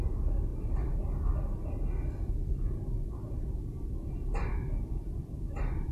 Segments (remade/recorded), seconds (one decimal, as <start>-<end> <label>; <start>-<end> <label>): 0.0-5.9 recorded